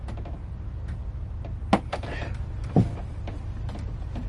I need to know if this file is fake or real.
real